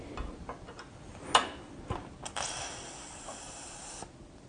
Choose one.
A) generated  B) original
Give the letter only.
B